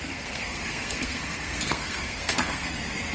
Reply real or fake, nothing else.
fake